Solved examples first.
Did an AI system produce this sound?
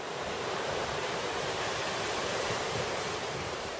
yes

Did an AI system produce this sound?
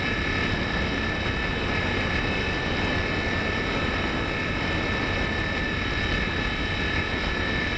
no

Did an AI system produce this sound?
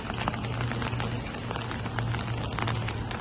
no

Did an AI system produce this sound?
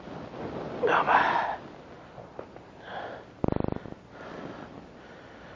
no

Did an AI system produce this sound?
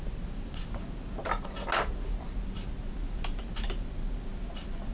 no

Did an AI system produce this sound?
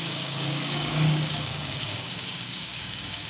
yes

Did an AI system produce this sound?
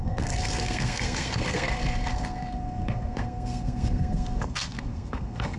yes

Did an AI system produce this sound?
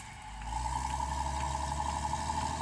no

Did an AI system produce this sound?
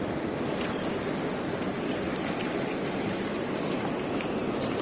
no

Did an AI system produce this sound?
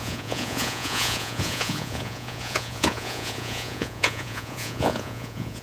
yes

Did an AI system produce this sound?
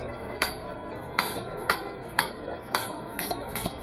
yes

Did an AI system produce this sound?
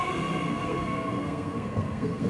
yes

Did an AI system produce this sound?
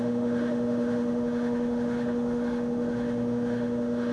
yes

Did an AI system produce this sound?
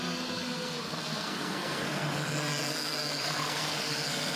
yes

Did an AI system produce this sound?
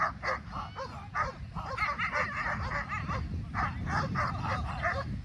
no